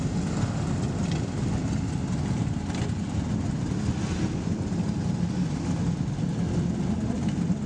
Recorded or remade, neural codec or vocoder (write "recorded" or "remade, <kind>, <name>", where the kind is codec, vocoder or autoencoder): recorded